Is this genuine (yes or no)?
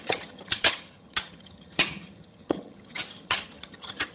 no